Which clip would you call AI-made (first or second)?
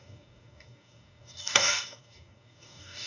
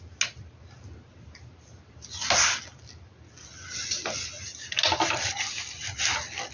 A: first